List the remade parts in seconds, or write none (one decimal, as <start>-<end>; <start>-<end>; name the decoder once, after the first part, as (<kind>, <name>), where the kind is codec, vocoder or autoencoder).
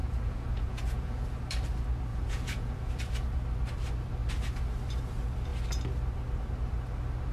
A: 0.0-1.2 (vocoder, Vocos); 2.1-2.9